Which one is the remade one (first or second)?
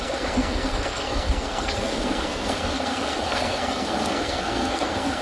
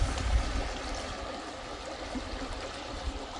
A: first